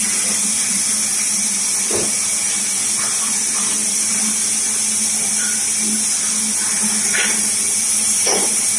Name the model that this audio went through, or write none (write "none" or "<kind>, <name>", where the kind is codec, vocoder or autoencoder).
none